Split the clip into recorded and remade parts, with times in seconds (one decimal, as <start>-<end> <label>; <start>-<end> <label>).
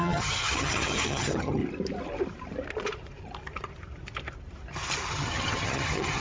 0.0-1.6 remade; 1.6-5.1 recorded; 5.1-6.2 remade